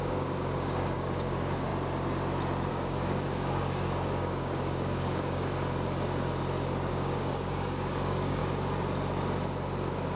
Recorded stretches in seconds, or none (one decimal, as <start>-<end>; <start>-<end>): 1.7-2.7; 5.5-6.9; 8.4-10.2